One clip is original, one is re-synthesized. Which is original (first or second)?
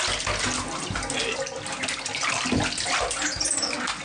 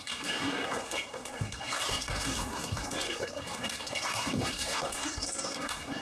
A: first